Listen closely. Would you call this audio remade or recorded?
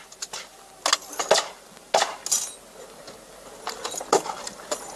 recorded